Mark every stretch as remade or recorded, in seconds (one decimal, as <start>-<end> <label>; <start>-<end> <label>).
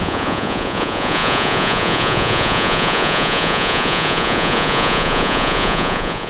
0.0-6.3 remade